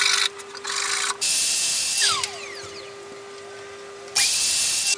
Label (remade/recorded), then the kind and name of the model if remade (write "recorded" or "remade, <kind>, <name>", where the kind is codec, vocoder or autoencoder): recorded